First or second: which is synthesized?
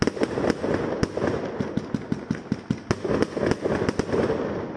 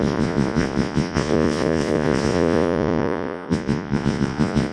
second